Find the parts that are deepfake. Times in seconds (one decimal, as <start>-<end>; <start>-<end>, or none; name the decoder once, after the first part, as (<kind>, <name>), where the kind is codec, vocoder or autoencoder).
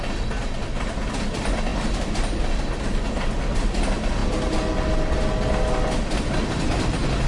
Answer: none